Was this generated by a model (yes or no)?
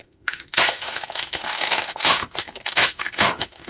yes